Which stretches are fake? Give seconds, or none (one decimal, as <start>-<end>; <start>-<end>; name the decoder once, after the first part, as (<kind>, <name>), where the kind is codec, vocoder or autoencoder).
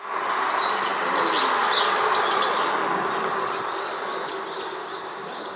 none